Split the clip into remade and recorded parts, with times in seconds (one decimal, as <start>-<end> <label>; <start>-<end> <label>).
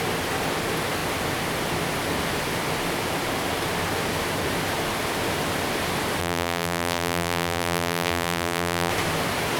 0.0-6.2 recorded; 6.2-8.9 remade; 8.9-9.6 recorded